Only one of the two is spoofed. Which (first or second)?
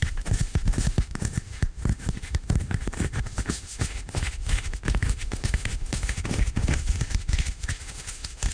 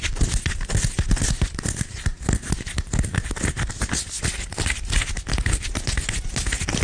first